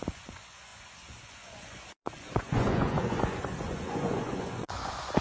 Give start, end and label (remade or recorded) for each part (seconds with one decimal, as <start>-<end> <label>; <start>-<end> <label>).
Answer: 0.0-5.2 remade